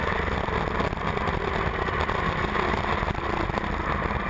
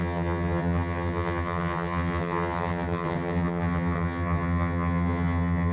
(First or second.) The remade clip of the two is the second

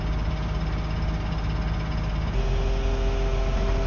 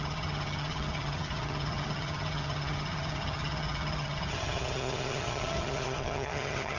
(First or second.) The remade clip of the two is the second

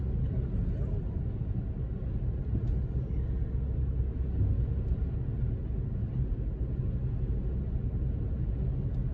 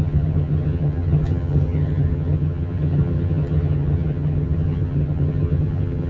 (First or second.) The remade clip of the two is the second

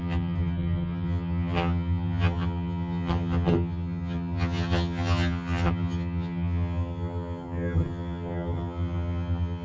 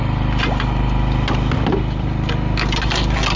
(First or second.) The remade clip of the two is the first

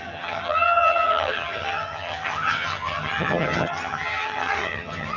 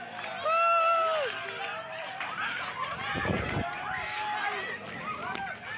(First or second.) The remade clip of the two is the first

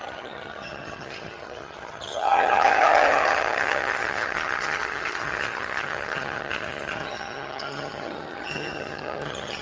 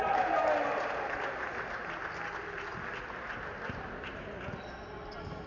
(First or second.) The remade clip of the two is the first